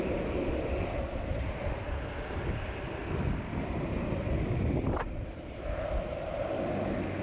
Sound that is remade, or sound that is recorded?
recorded